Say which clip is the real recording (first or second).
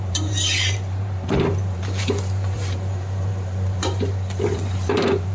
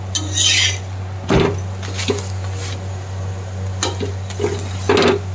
second